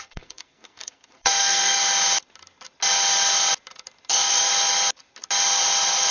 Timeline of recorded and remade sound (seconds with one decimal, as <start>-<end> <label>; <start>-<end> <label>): 0.0-1.8 remade; 1.8-4.1 recorded; 4.1-4.5 remade; 4.5-6.1 recorded